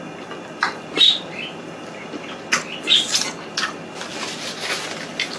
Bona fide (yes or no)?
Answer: yes